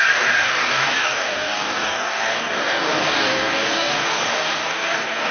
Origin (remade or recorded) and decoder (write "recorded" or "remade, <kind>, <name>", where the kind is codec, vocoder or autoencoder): remade, codec, DAC